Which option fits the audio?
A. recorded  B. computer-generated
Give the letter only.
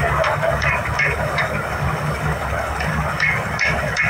B